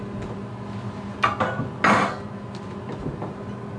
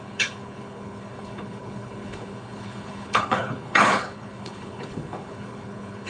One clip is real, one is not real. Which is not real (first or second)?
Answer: second